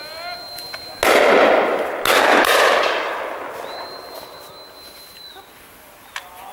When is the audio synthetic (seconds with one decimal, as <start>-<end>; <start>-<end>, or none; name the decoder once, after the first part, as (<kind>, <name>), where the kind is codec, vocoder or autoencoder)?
none

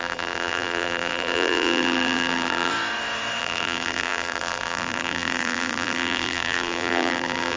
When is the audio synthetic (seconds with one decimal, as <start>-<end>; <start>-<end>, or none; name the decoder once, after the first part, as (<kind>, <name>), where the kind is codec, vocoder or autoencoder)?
0.0-2.7 (vocoder, BigVGAN v2); 3.4-7.6

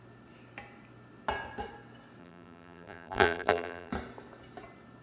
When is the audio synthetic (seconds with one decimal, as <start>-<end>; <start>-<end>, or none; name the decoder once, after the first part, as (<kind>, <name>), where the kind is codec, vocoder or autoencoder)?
2.2-3.9 (vocoder, BigVGAN v2)

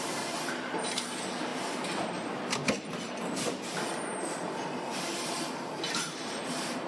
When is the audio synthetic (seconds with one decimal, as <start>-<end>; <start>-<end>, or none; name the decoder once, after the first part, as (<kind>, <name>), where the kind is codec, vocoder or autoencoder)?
0.0-1.5 (vocoder, BigVGAN v2); 3.2-6.9

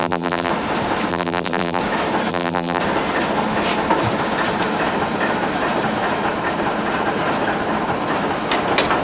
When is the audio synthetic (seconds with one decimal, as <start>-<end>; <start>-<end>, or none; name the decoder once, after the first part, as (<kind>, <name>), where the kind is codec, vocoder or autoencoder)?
0.0-0.5 (vocoder, BigVGAN v2); 1.1-1.8; 2.3-2.8

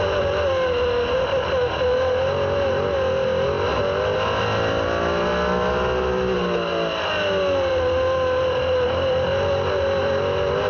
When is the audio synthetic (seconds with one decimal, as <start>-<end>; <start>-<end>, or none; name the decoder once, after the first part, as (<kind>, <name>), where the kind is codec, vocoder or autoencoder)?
none

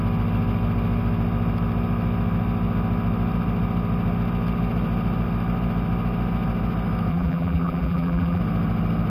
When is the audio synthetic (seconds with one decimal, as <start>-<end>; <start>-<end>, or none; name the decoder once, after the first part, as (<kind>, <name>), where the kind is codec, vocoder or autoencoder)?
7.1-8.4 (vocoder, BigVGAN v2)

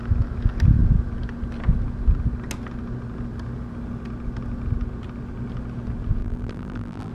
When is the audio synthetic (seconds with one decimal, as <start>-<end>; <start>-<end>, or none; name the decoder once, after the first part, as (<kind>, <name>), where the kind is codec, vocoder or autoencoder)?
6.2-7.1 (vocoder, BigVGAN v2)